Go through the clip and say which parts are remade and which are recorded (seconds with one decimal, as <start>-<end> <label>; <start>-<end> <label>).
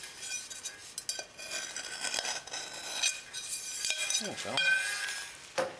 0.0-5.8 recorded